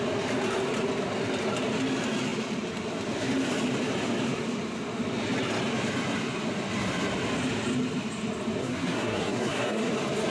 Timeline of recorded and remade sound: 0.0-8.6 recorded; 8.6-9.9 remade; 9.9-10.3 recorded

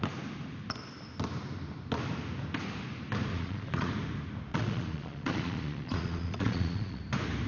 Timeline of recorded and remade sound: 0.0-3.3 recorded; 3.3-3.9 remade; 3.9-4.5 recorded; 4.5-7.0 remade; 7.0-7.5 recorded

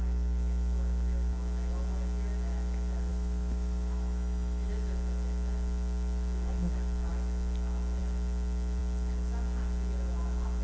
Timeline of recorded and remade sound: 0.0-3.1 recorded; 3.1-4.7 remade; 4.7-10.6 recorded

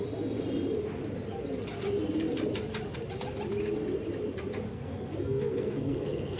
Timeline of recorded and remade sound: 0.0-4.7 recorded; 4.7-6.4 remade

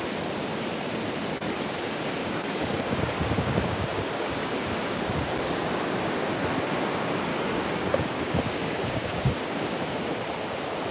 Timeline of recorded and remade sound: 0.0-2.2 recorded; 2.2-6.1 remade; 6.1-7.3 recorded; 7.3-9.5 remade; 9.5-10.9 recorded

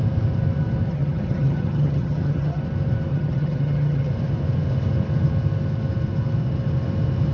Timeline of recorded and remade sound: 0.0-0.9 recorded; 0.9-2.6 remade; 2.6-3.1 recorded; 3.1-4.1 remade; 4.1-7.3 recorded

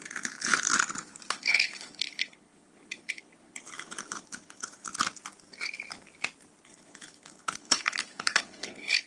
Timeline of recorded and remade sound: 0.0-0.7 remade; 0.7-1.3 recorded; 1.3-4.9 remade; 4.9-6.6 recorded; 6.6-9.1 remade

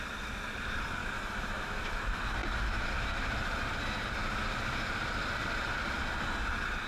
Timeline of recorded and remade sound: 0.0-1.0 recorded; 1.0-2.0 remade; 2.0-6.9 recorded